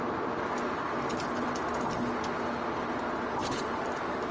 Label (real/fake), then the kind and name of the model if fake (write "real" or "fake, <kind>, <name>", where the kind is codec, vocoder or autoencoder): real